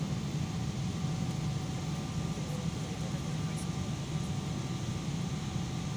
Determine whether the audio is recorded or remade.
recorded